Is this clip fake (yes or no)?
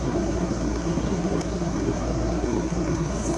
yes